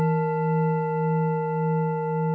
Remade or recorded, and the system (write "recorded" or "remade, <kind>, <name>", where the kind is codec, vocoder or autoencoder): recorded